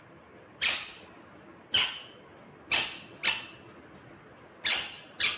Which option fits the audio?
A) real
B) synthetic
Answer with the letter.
A